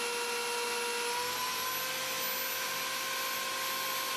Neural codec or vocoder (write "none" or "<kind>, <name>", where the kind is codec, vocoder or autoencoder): none